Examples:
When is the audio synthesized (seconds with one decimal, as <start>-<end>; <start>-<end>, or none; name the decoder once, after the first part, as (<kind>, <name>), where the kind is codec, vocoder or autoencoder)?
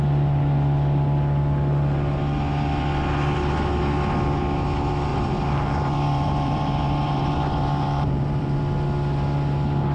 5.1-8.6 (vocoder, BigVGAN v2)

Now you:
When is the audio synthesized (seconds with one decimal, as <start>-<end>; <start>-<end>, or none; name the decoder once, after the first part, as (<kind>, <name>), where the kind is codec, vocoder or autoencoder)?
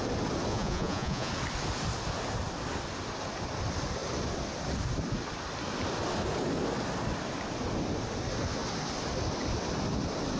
0.5-1.3 (vocoder, Vocos)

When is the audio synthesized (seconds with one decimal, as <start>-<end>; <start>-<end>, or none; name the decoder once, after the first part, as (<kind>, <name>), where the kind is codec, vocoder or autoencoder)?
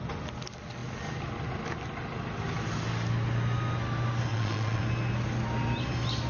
4.3-4.8 (vocoder, Vocos)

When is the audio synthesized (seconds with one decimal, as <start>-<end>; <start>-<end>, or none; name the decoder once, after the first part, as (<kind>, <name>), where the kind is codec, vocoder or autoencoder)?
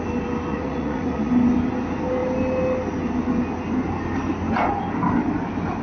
0.5-1.3 (vocoder, Vocos)